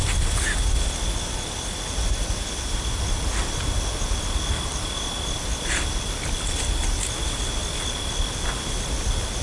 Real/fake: real